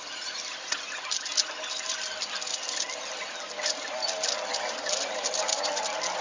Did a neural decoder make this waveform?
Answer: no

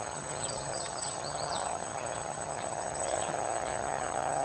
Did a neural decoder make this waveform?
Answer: yes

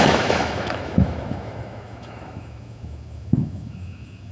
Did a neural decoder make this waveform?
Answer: yes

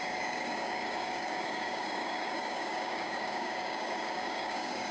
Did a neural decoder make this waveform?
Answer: yes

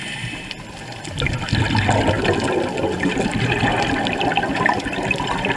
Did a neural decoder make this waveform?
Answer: no